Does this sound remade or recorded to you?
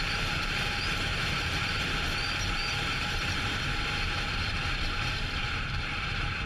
remade